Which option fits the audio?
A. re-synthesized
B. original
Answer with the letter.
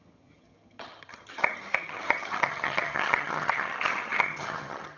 A